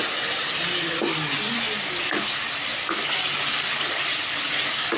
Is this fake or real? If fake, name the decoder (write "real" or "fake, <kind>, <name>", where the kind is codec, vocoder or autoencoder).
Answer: real